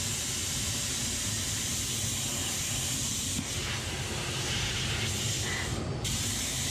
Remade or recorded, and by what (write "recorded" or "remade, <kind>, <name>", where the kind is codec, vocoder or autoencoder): recorded